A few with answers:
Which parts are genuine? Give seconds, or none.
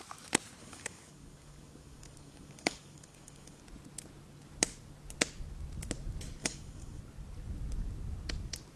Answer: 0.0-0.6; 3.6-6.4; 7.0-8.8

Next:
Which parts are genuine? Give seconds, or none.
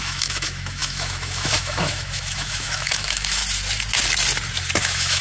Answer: 3.4-4.8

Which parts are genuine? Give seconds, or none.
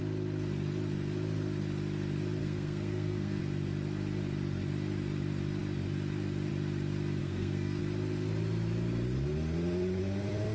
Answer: 0.0-2.4; 3.4-7.2; 7.8-10.5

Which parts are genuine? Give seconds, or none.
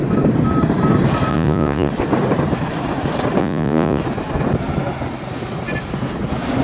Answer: 0.0-1.3; 1.9-3.4; 4.0-6.6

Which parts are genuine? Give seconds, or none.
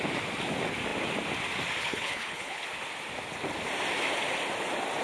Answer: 0.0-1.8; 2.6-5.0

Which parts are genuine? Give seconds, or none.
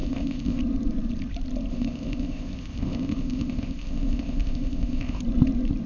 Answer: 0.6-1.7; 5.2-5.9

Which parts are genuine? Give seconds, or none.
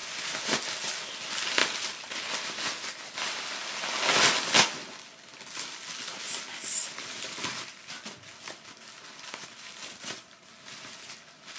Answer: 0.0-11.6